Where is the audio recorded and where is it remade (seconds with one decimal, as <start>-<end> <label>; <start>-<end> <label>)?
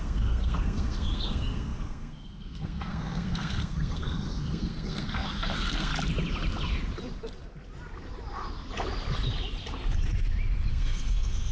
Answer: 0.0-5.9 remade; 5.9-10.7 recorded; 10.7-11.5 remade